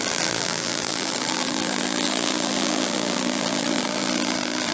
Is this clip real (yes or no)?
no